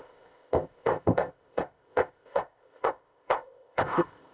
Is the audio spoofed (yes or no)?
yes